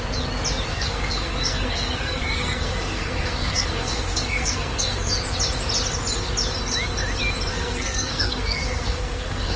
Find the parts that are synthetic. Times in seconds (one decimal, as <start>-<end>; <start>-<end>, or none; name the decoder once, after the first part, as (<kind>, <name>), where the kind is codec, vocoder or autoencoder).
0.7-5.1 (codec, SNAC); 7.5-9.6

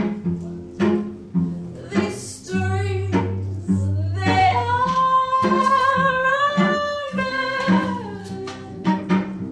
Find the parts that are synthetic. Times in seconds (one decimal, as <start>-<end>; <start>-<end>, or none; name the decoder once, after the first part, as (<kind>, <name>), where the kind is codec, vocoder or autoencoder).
4.4-7.6 (codec, SNAC); 8.2-9.1

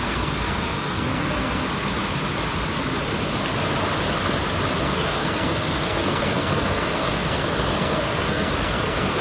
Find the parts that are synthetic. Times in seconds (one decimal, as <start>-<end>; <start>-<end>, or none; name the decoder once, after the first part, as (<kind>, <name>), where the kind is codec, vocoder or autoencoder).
0.0-1.6 (codec, SNAC); 4.8-9.2

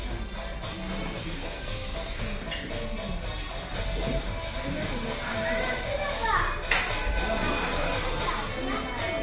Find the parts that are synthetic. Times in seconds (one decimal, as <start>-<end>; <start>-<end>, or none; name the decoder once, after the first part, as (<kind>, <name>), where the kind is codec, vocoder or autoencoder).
1.2-2.2 (codec, SNAC)

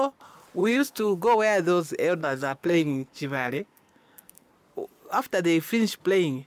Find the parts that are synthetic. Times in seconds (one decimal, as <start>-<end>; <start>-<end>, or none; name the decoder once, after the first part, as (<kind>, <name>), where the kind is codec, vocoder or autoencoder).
0.6-1.2 (codec, SNAC); 2.2-4.5

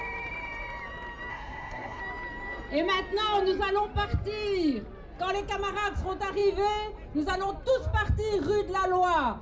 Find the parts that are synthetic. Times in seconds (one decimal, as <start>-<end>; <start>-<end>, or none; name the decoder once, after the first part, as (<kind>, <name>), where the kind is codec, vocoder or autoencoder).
1.3-2.0 (codec, SNAC)